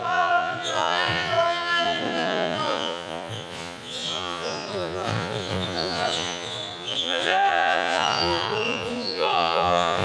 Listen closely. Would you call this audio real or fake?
fake